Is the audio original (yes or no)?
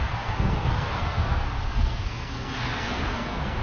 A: no